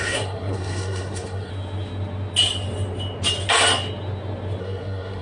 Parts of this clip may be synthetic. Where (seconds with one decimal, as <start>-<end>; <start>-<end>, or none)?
0.0-1.5; 4.6-5.2